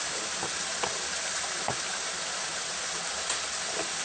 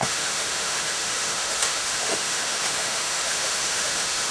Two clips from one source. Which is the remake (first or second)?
second